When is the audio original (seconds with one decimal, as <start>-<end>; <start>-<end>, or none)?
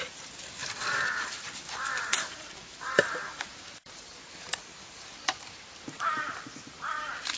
0.0-2.1; 6.5-7.4